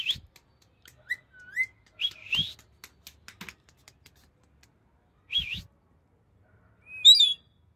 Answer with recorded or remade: recorded